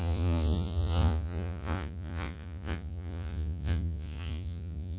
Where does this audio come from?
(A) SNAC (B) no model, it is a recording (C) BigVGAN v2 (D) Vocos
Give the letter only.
D